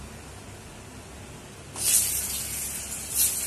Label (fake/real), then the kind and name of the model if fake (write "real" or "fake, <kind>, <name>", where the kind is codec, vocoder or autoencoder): real